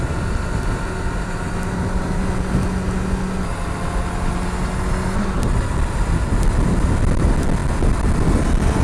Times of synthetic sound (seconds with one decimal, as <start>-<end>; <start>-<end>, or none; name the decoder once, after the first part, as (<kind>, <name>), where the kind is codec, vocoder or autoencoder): none